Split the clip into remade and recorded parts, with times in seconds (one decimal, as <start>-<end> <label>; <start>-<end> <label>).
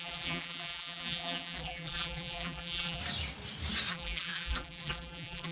0.0-3.0 remade; 3.0-3.9 recorded; 3.9-5.5 remade